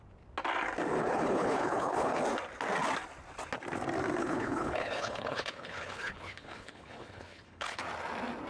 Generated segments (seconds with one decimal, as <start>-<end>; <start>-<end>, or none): 1.0-2.2; 4.2-7.8